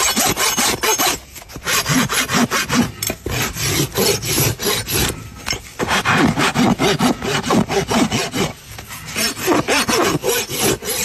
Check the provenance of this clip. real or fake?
real